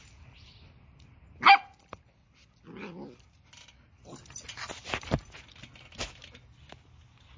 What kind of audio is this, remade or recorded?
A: recorded